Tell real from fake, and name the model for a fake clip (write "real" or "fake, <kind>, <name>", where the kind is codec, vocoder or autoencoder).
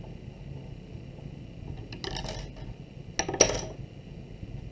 real